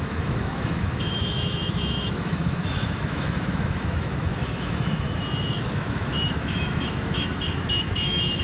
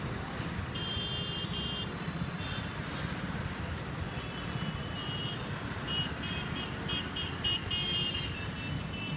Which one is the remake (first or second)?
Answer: first